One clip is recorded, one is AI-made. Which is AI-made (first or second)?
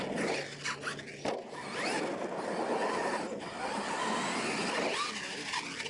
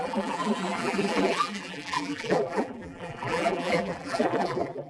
second